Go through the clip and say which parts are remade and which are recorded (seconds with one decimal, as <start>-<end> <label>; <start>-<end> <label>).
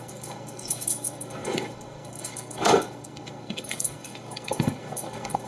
0.0-5.5 remade